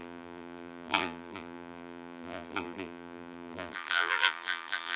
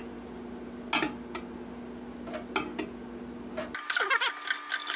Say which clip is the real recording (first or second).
second